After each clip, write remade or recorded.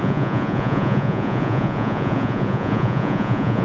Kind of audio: remade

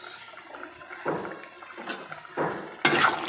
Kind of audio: recorded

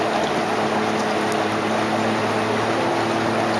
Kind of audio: recorded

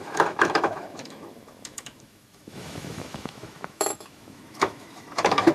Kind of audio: remade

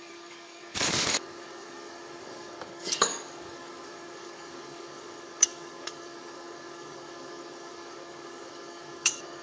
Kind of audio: remade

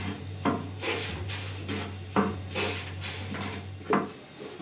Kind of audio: recorded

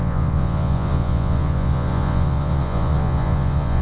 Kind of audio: remade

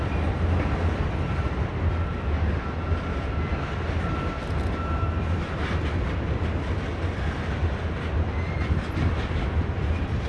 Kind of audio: recorded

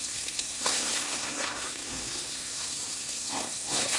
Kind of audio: remade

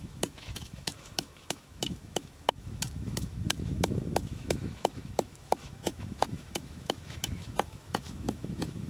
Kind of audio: remade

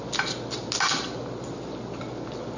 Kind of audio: recorded